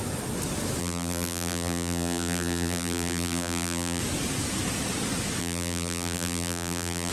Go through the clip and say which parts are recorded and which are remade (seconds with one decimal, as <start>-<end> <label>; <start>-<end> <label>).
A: 0.0-0.8 recorded; 0.8-4.0 remade; 4.0-5.4 recorded; 5.4-7.1 remade